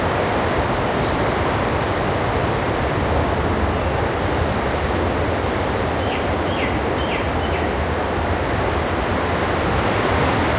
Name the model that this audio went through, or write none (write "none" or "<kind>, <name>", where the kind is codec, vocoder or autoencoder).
none